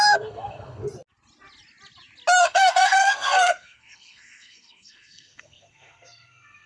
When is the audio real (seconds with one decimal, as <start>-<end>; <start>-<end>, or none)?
0.8-2.4